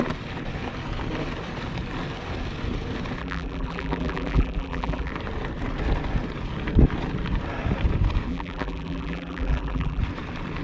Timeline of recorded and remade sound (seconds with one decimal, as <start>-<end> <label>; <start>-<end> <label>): 0.0-3.2 recorded; 3.2-5.1 remade; 5.1-8.3 recorded; 8.3-10.0 remade; 10.0-10.6 recorded